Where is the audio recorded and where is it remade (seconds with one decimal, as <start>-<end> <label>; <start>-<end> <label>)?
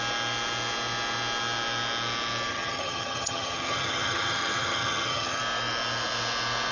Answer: 0.0-2.5 recorded; 2.5-5.4 remade; 5.4-6.7 recorded